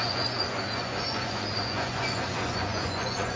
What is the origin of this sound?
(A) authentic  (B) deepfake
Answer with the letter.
B